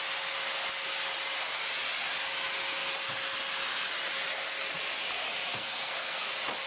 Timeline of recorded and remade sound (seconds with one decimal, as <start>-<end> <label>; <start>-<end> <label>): 0.0-5.5 recorded; 5.5-6.3 remade; 6.3-6.7 recorded